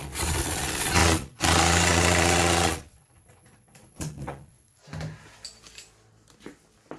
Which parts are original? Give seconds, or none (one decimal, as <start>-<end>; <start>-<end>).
4.8-7.0